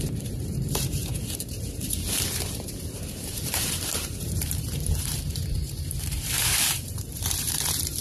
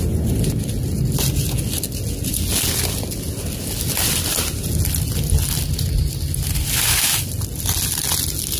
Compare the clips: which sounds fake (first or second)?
first